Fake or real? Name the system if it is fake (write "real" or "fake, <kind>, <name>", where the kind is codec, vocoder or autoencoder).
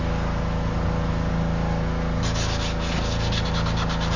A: real